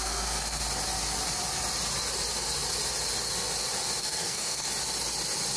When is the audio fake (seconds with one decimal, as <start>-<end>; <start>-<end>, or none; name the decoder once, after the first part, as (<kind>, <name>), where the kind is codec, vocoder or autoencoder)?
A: 0.0-0.6 (codec, SNAC); 4.0-4.7